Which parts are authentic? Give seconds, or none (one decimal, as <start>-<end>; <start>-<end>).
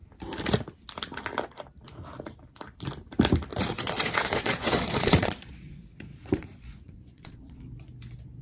0.0-3.5; 7.6-8.4